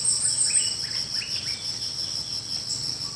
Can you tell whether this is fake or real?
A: real